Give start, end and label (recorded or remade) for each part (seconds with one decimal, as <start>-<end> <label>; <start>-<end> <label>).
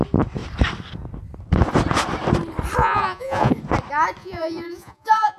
0.0-2.8 recorded; 2.8-3.5 remade; 3.5-4.2 recorded; 4.2-5.4 remade